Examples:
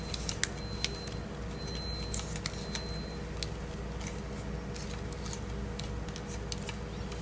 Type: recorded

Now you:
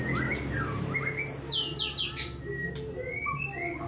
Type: recorded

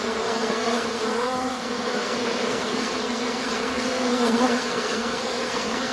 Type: remade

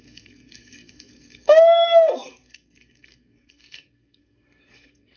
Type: remade